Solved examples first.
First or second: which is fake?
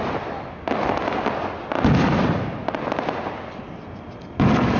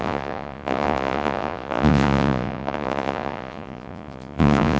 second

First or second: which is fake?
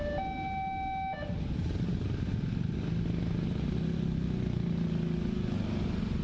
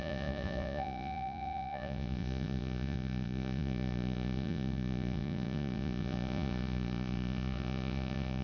second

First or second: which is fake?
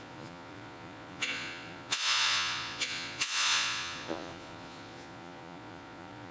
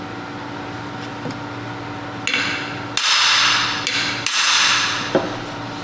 first